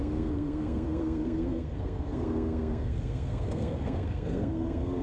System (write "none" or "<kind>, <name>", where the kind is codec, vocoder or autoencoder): codec, SNAC